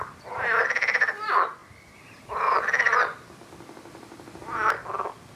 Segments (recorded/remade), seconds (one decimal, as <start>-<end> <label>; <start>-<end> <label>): 0.0-1.6 remade; 1.6-3.6 recorded; 3.6-5.4 remade